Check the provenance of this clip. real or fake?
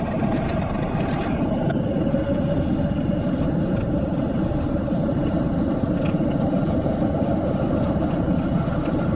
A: real